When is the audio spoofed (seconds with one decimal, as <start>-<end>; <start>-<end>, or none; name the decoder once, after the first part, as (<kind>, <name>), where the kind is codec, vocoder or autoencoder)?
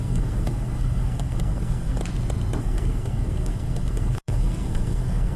0.0-2.0 (codec, SNAC); 2.6-5.4